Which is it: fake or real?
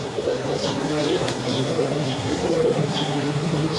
fake